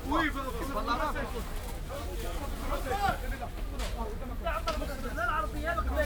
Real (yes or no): yes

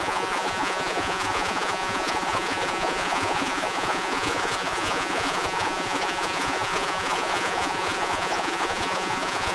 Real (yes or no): no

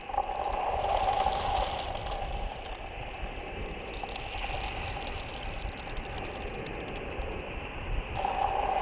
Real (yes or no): yes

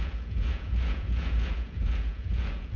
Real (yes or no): no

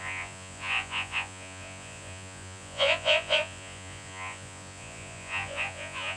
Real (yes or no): no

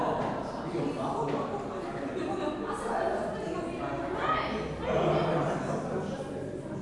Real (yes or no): yes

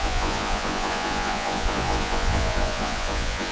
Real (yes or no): no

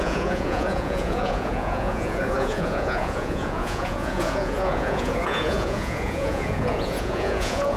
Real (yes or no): no